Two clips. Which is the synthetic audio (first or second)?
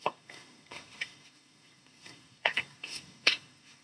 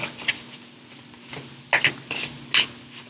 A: first